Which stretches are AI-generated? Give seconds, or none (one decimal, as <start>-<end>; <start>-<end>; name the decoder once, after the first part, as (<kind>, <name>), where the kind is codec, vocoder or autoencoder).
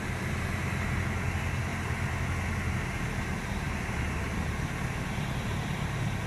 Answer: none